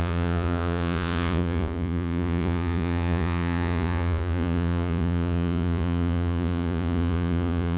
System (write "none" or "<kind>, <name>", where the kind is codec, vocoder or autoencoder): vocoder, Vocos